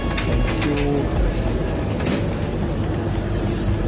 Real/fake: real